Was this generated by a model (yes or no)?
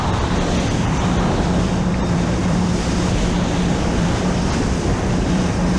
yes